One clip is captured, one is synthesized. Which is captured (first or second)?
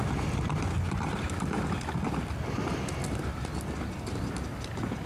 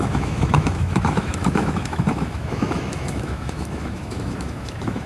first